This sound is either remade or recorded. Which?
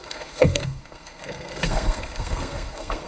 remade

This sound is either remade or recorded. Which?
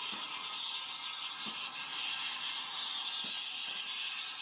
recorded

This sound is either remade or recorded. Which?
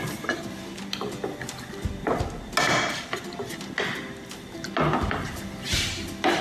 recorded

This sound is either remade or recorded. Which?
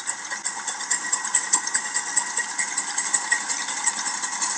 recorded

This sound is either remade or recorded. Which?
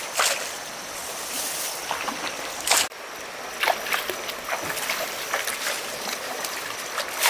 recorded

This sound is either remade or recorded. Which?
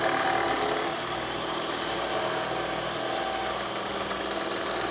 recorded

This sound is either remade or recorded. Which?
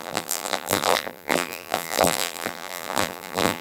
remade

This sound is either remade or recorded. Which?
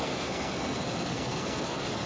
remade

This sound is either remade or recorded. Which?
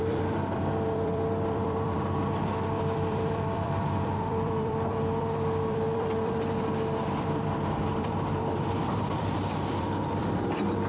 remade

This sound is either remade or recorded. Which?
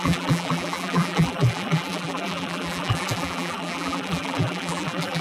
remade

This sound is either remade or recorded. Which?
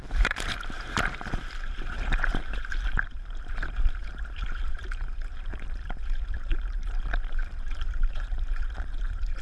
remade